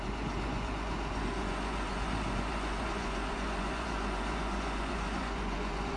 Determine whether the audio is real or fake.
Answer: fake